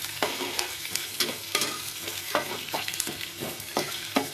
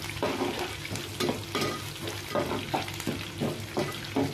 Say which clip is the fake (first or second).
first